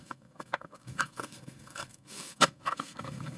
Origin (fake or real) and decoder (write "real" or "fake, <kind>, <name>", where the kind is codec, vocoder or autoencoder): fake, codec, SNAC